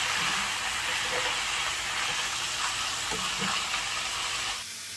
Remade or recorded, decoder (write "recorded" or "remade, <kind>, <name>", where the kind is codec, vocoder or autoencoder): recorded